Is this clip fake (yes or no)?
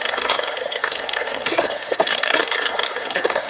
yes